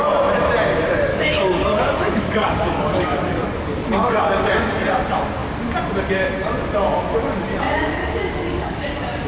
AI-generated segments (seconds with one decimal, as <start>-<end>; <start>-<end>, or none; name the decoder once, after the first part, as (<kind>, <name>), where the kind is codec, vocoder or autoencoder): 1.1-4.5 (codec, DAC); 8.0-8.9